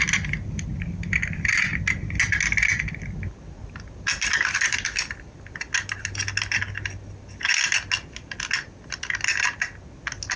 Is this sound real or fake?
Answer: real